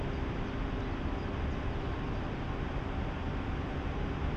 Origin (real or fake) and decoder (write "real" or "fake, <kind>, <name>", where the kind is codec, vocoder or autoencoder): real